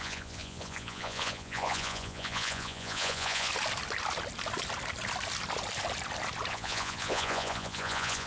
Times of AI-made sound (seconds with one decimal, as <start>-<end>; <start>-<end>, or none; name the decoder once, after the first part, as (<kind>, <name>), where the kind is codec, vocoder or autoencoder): 0.0-3.5 (vocoder, Vocos); 6.5-8.3